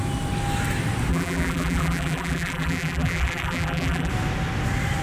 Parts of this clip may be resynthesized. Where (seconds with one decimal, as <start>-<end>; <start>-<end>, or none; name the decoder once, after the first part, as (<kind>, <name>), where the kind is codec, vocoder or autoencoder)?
1.1-4.1 (vocoder, BigVGAN v2)